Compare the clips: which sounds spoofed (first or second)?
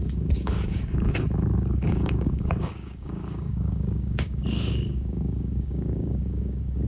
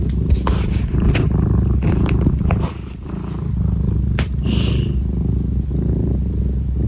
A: first